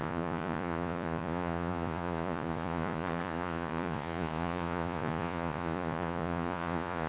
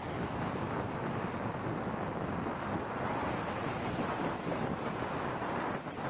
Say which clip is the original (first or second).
second